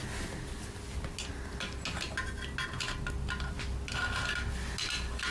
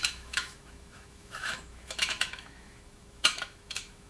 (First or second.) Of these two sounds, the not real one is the second